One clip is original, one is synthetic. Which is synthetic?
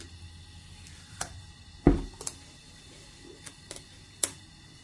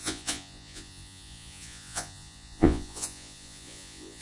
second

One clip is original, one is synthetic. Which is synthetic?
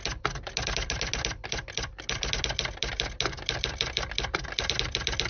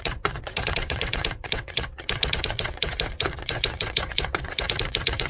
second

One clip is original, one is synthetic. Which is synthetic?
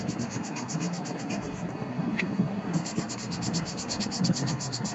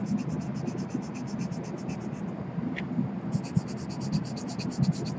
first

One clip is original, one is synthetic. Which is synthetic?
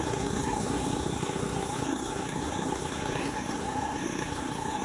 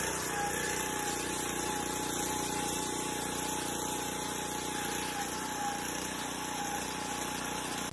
first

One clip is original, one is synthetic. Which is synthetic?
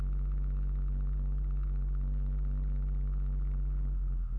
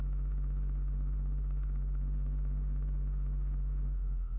second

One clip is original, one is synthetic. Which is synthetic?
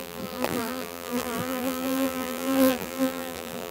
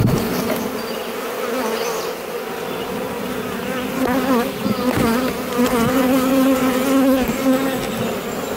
first